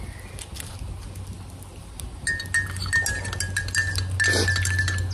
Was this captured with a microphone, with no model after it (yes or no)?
yes